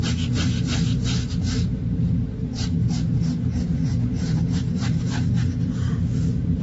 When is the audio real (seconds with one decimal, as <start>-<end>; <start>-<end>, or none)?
0.0-6.6